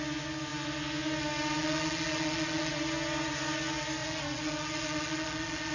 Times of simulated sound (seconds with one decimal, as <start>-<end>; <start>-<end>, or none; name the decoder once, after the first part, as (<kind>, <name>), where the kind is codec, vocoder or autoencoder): 1.6-2.7 (vocoder, Vocos); 4.0-5.7